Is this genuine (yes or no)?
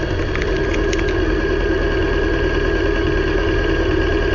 yes